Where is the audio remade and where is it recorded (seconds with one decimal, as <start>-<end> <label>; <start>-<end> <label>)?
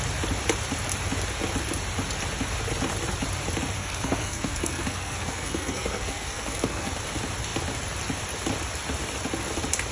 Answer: 0.0-3.8 recorded; 3.8-6.9 remade; 6.9-9.9 recorded